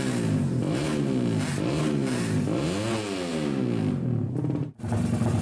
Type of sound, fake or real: real